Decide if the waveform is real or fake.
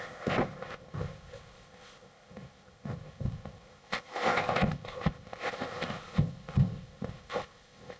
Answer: fake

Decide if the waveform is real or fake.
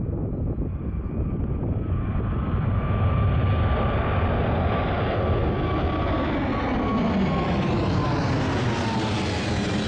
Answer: real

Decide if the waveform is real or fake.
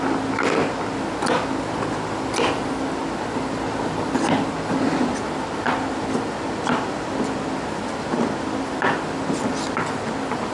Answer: real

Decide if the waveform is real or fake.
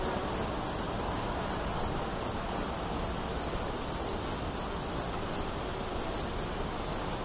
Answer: real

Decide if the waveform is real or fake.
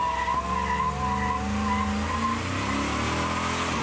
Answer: real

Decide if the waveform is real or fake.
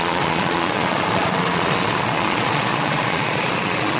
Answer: fake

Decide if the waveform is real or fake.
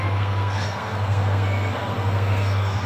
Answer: fake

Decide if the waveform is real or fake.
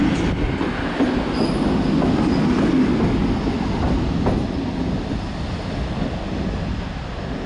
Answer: real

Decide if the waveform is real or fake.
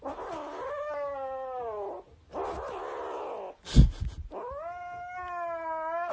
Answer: real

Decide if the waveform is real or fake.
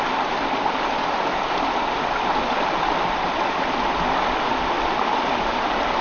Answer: real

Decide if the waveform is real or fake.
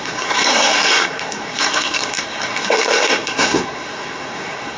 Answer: fake